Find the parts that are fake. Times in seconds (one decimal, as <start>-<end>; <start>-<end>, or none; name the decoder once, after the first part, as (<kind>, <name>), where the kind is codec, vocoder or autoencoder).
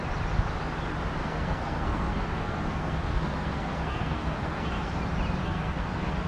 1.2-5.0 (codec, SNAC); 5.4-6.3